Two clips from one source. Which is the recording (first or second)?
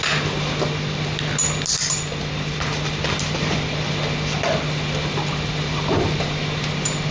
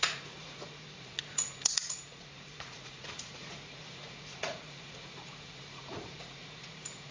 first